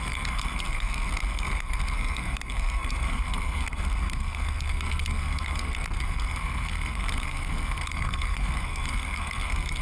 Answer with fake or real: fake